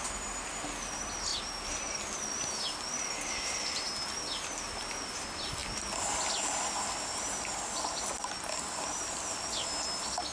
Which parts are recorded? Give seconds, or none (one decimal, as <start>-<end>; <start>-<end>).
0.0-10.3

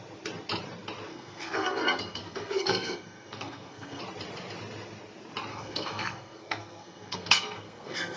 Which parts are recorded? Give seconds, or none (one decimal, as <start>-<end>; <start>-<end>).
0.0-1.1; 4.0-5.5

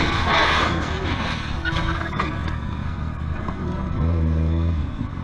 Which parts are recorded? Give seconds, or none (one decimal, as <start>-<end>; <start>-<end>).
none

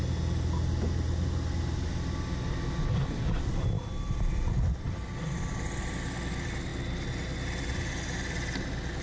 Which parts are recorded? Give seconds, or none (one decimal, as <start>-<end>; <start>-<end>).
0.0-9.0

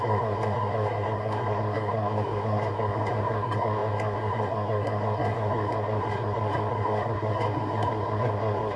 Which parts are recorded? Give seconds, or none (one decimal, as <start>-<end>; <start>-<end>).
none

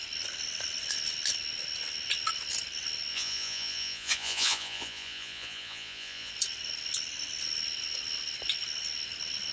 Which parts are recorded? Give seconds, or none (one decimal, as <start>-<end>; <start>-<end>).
0.0-3.1; 6.3-9.5

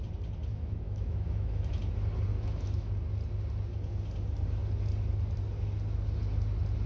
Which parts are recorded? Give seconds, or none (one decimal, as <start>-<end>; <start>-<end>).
0.0-0.5; 1.8-2.3; 2.9-6.9